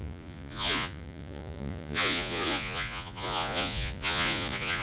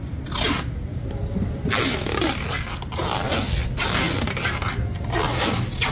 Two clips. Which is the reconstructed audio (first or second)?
first